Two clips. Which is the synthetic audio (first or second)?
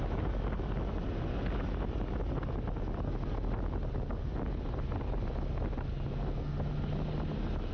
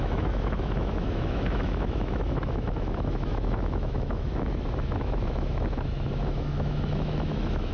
second